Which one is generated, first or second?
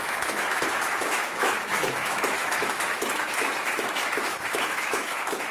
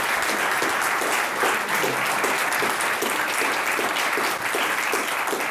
first